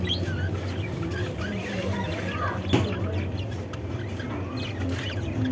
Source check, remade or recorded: recorded